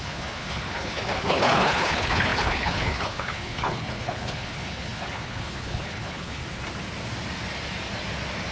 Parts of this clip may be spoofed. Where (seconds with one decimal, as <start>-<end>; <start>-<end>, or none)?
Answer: 0.0-6.4